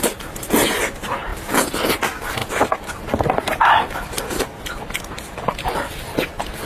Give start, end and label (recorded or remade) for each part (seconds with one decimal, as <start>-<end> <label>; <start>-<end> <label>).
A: 0.0-6.7 recorded